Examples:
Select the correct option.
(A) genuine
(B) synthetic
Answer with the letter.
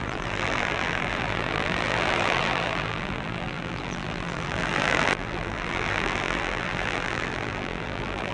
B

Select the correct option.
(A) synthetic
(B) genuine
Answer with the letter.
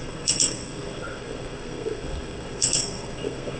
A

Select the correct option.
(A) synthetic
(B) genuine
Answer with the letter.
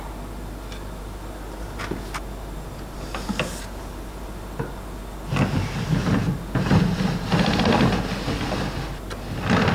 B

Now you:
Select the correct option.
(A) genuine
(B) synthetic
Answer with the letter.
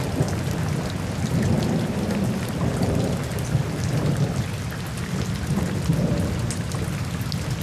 A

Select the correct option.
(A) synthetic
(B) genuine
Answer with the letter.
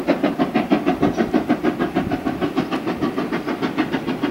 B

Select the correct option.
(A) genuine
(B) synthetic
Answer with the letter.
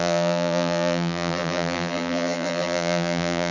B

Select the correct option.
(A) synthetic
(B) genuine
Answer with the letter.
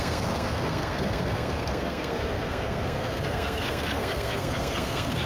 A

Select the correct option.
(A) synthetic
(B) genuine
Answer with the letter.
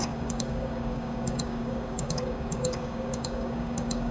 A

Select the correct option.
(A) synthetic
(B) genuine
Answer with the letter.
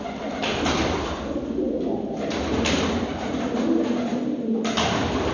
B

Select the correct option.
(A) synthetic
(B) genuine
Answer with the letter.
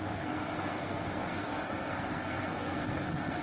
A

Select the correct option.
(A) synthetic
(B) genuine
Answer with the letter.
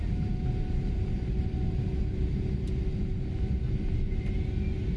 B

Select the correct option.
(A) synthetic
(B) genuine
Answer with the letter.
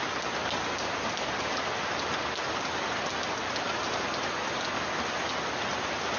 B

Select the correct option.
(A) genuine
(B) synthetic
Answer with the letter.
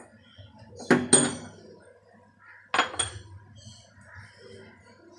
A